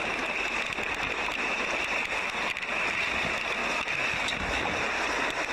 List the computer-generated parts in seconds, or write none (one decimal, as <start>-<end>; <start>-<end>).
1.2-1.9